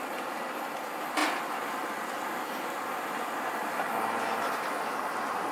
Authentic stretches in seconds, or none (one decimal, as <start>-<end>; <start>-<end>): 0.0-5.5